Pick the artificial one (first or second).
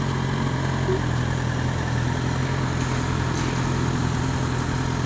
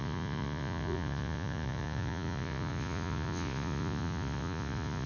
second